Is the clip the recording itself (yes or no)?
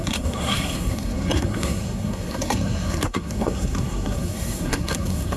no